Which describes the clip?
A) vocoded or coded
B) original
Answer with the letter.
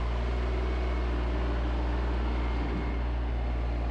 B